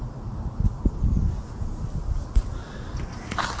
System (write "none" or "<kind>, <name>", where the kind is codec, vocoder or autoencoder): none